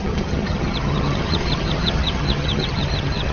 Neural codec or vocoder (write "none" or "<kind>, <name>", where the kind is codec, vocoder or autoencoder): vocoder, HiFi-GAN